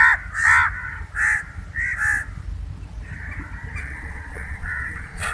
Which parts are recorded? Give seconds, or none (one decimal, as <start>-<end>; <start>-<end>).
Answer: 0.0-3.8